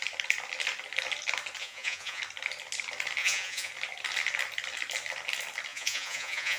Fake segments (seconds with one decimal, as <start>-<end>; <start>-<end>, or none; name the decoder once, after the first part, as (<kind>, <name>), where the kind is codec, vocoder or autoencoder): 1.6-2.2 (vocoder, Vocos); 3.2-3.7; 5.7-6.6